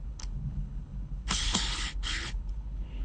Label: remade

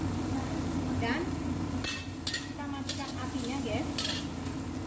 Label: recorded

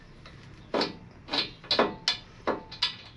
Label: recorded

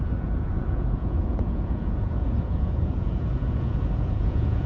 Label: remade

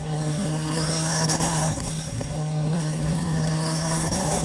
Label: remade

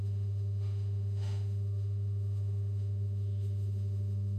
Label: remade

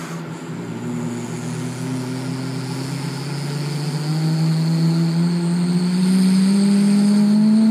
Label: recorded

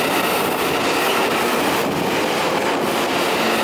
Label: remade